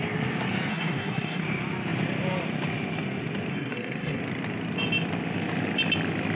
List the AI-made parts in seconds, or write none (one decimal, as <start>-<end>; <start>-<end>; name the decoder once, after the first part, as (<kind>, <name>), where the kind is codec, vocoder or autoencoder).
0.7-1.4 (codec, SNAC); 3.5-4.2